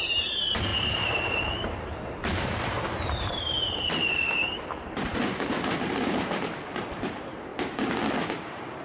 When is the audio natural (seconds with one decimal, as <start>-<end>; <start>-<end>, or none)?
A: 7.5-8.4